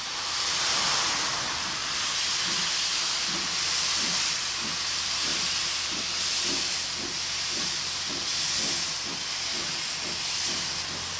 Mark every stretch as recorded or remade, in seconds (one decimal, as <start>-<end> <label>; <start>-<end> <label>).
0.0-11.2 recorded